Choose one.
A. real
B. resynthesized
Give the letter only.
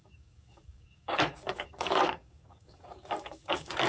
B